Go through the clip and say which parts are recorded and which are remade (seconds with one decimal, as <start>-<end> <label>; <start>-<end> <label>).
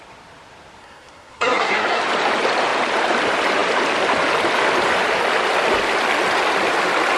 0.0-0.8 recorded; 0.8-2.0 remade; 2.0-7.2 recorded